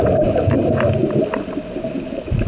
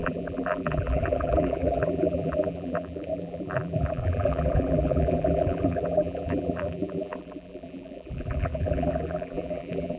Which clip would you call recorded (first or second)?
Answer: first